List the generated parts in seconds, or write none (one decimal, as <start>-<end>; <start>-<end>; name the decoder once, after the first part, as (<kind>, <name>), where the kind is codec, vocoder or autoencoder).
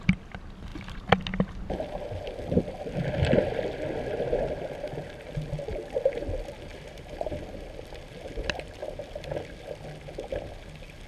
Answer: 6.7-7.4 (vocoder, BigVGAN v2)